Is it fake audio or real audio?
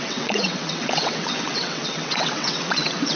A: fake